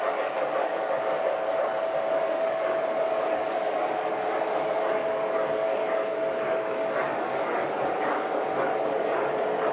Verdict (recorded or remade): remade